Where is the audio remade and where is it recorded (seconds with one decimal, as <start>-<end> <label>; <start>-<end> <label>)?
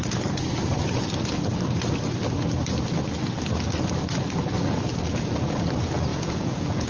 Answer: 0.0-6.1 recorded; 6.1-6.9 remade